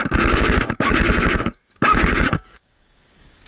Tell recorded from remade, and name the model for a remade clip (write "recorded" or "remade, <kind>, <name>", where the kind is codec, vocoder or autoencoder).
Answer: remade, codec, DAC